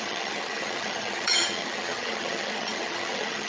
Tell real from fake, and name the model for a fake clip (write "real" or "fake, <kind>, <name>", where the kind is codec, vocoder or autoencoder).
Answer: fake, vocoder, HiFi-GAN